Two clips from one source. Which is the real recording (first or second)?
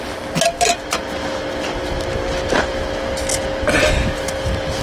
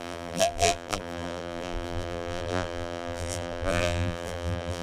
first